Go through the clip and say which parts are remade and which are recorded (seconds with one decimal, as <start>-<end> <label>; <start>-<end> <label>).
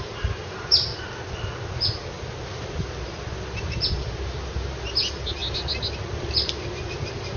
0.0-0.9 remade; 0.9-3.9 recorded; 3.9-5.4 remade; 5.4-7.4 recorded